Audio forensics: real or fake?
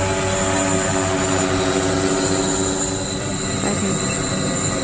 real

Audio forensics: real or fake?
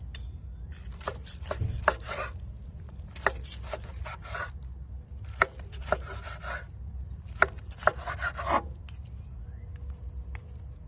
real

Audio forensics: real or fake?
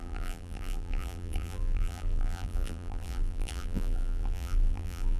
fake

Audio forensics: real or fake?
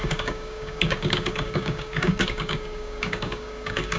fake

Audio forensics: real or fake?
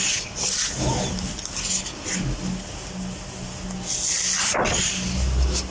real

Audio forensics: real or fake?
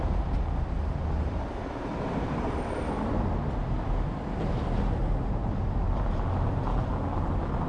real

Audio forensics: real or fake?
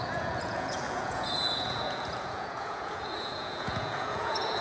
fake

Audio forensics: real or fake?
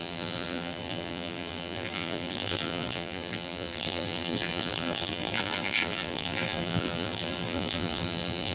fake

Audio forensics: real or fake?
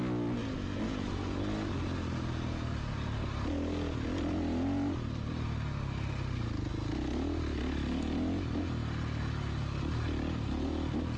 real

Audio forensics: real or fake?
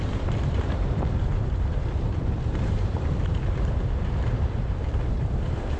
fake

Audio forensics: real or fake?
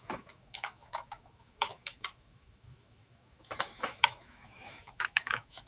fake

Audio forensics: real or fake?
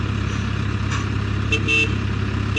real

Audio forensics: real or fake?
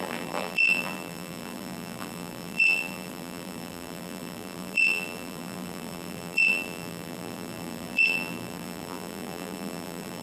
fake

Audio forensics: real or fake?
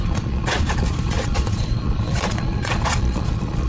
fake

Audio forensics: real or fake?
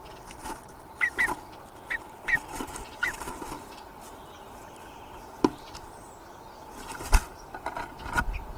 real